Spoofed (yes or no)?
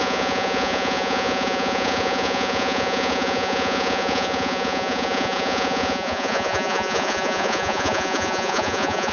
yes